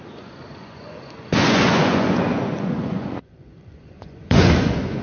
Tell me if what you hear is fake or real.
fake